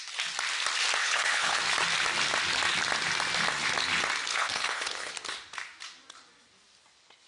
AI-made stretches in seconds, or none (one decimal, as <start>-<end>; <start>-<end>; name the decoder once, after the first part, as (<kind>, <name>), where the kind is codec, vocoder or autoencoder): 1.0-1.6 (codec, HILCodec); 4.3-5.1